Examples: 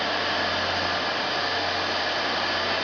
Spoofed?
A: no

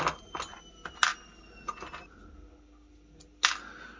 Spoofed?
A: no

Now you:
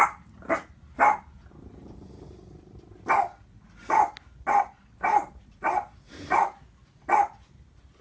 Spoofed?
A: no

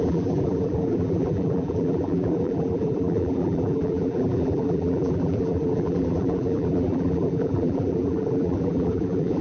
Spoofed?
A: yes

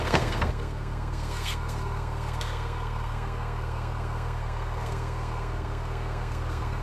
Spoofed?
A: yes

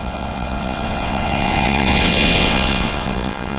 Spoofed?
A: yes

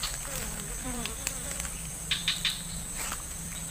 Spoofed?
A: yes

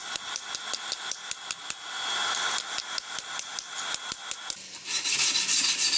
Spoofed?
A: no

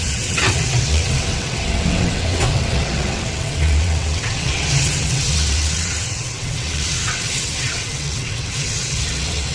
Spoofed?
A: yes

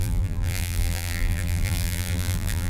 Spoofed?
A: yes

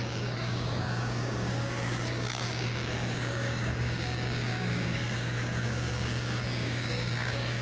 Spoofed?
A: yes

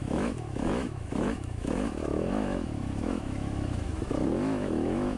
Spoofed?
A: yes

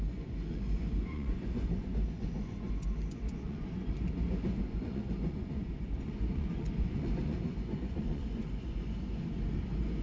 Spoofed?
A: yes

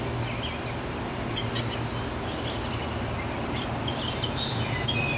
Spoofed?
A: no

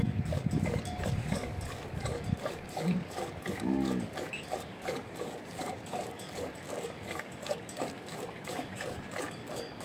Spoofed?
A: yes